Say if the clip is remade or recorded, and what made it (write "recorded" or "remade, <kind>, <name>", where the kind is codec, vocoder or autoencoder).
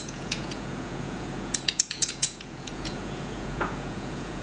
remade, vocoder, Vocos